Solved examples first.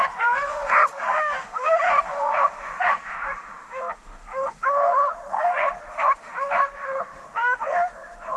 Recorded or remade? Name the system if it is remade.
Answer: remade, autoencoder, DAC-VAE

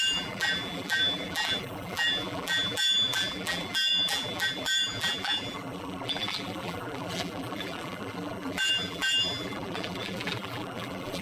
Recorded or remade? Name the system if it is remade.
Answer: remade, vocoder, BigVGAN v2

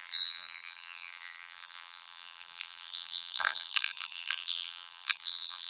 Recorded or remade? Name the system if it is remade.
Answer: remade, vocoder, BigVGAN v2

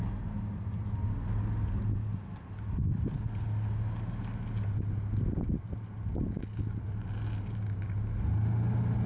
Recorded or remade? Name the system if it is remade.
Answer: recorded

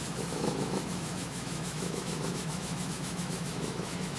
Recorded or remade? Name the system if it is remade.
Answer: remade, autoencoder, DAC-VAE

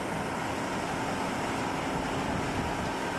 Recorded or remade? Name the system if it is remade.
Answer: recorded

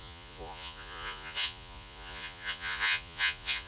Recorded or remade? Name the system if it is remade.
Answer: remade, vocoder, Vocos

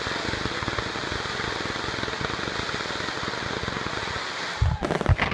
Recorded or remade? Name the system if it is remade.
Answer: recorded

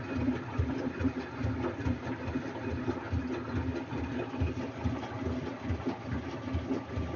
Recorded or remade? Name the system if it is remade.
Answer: recorded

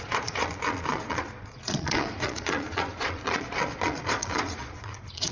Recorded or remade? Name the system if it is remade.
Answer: remade, vocoder, Vocos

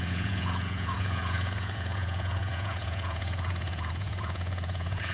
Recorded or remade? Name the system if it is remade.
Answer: remade, vocoder, Vocos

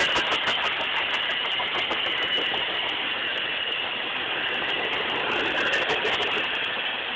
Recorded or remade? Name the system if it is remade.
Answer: recorded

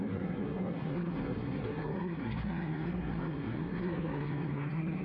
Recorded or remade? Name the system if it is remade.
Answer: remade, codec, SNAC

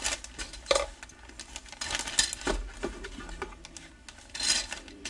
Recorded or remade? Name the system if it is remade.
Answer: recorded